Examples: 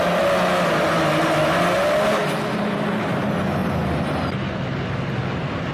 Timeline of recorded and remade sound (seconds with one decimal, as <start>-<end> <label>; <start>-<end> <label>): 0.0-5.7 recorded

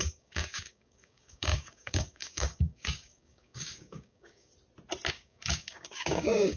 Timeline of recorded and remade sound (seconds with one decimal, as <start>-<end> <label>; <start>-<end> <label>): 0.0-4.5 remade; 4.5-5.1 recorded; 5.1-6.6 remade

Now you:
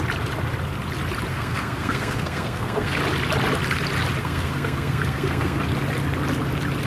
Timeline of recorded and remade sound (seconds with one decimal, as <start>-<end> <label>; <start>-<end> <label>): 0.0-1.3 recorded; 1.3-3.0 remade; 3.0-4.2 recorded; 4.2-5.6 remade; 5.6-6.9 recorded